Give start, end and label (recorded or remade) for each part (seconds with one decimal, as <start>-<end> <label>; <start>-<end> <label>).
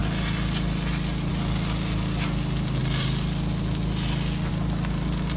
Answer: 0.0-5.4 recorded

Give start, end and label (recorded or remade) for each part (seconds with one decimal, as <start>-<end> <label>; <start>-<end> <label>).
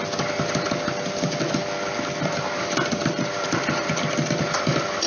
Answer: 0.0-3.0 recorded; 3.0-4.3 remade; 4.3-5.1 recorded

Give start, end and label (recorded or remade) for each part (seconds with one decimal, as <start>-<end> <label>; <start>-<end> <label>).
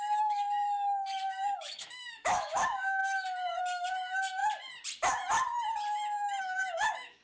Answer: 0.0-4.4 remade; 4.4-6.4 recorded; 6.4-7.2 remade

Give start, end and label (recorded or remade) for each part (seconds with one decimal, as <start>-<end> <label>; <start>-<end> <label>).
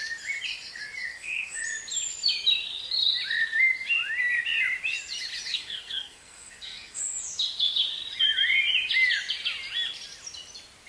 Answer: 0.0-1.1 recorded; 1.1-1.6 remade; 1.6-5.5 recorded; 5.5-7.0 remade; 7.0-10.9 recorded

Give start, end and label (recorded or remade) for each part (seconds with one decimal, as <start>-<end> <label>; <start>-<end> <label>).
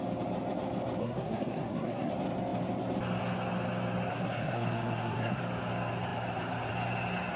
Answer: 0.0-1.0 recorded; 1.0-2.1 remade; 2.1-4.1 recorded; 4.1-5.4 remade; 5.4-7.4 recorded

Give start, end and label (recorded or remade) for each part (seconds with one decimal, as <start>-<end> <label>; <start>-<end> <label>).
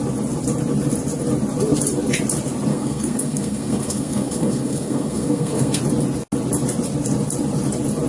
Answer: 0.0-2.7 recorded; 2.7-5.8 remade; 5.8-8.1 recorded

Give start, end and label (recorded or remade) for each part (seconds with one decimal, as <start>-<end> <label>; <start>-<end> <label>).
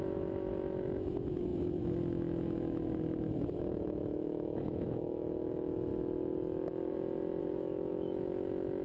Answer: 0.0-5.9 remade; 5.9-7.4 recorded; 7.4-8.8 remade